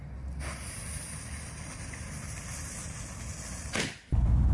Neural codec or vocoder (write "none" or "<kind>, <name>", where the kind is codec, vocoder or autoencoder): none